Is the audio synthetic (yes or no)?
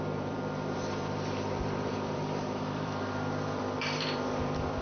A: yes